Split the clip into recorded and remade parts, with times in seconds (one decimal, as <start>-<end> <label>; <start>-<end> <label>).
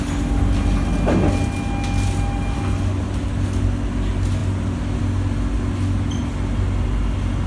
0.0-7.5 recorded